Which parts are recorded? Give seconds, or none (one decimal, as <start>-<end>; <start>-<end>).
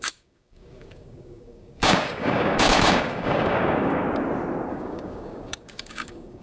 4.0-4.7